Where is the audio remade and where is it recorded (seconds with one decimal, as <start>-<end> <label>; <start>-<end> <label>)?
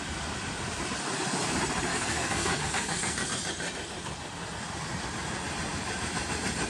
0.0-1.9 recorded; 1.9-3.3 remade; 3.3-6.7 recorded